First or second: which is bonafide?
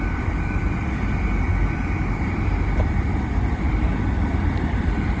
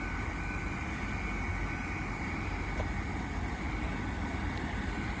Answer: second